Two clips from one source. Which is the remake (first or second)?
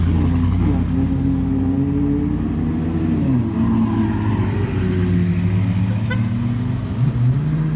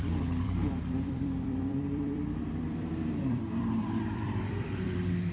second